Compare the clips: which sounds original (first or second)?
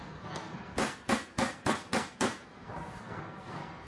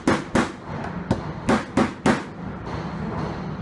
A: second